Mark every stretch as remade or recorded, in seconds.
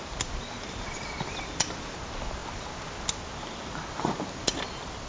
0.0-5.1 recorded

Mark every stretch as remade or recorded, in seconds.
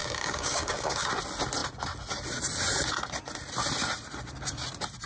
0.0-1.1 remade; 1.1-5.1 recorded